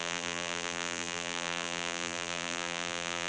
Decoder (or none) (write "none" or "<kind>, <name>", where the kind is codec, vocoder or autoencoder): vocoder, BigVGAN v2